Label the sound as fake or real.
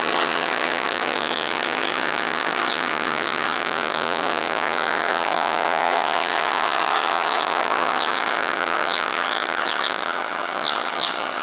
fake